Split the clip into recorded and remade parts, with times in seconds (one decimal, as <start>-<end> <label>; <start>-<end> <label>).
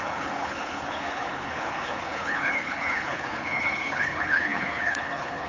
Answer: 0.0-5.5 remade